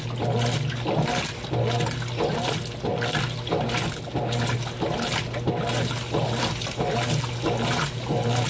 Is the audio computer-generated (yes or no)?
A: no